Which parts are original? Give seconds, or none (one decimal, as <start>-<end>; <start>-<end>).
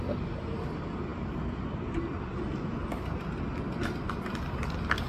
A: 0.0-5.1